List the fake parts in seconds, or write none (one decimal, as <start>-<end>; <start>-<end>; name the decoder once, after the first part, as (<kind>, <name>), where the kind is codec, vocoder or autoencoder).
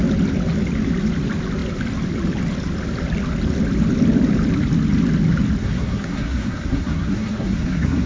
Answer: 5.6-8.1 (codec, SNAC)